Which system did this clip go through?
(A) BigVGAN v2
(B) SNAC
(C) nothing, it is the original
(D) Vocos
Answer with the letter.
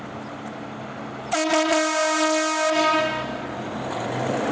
C